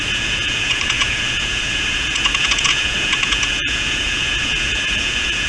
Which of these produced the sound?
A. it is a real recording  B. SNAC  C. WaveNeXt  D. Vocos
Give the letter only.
D